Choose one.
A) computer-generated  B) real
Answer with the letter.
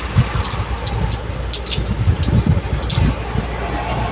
B